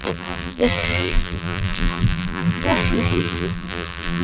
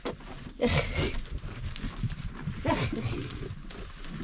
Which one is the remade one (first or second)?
first